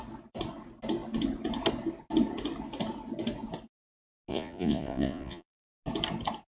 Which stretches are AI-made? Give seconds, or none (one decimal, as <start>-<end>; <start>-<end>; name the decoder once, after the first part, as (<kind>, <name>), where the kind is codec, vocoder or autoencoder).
4.3-5.7 (vocoder, Vocos)